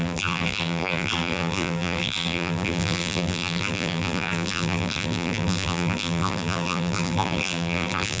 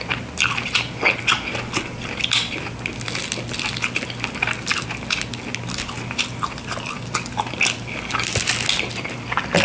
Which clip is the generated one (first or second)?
first